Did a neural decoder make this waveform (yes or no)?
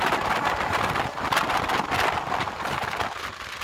no